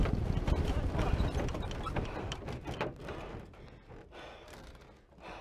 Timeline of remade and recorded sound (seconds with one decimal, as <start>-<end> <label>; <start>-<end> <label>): 0.0-3.2 remade; 3.2-5.4 recorded